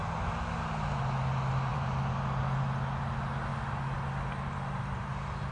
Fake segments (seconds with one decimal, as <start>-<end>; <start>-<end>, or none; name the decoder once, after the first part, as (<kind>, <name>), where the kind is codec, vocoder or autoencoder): 1.7-2.4 (vocoder, BigVGAN v2)